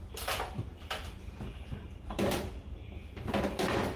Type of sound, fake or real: fake